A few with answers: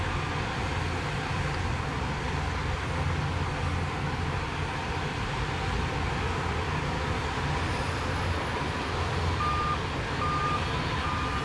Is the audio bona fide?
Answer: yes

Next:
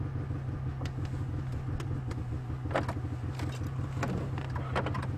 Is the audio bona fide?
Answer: yes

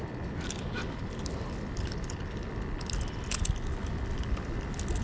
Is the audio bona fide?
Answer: yes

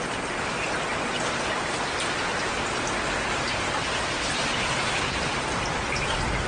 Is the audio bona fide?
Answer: yes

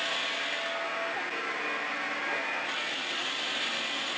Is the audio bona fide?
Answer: yes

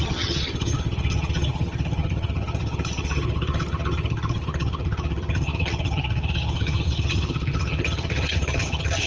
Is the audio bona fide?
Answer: no